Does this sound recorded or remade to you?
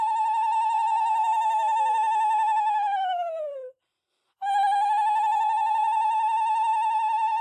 recorded